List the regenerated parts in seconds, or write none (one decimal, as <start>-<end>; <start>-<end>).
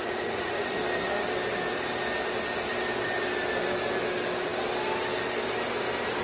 0.0-0.7